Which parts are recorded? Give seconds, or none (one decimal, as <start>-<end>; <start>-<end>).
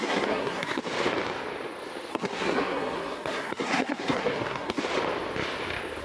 0.8-2.1; 4.8-6.0